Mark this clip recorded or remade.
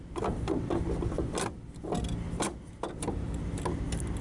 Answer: recorded